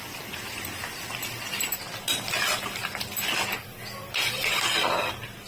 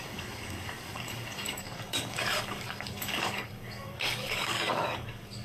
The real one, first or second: first